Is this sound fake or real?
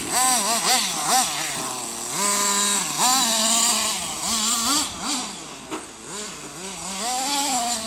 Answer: real